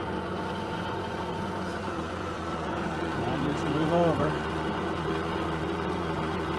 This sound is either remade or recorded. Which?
remade